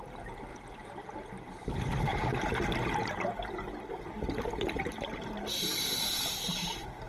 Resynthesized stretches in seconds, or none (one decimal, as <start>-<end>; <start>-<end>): none